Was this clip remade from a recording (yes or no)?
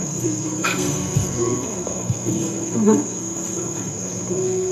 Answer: yes